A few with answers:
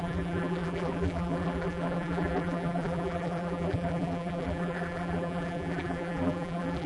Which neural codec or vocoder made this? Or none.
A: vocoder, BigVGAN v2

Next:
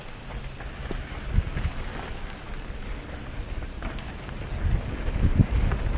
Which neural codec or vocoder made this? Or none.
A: none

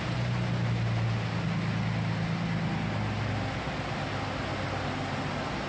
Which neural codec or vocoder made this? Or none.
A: none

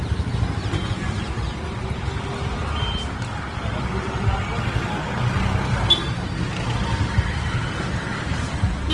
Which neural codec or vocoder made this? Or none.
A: none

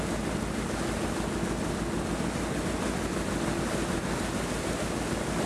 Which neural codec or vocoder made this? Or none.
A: none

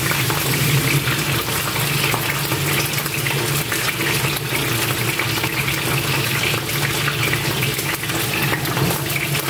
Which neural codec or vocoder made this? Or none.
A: none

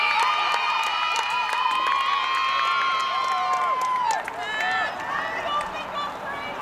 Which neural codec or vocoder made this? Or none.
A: none